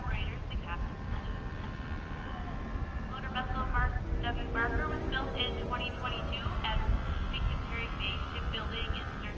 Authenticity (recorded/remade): recorded